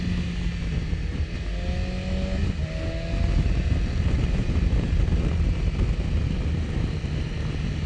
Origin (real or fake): real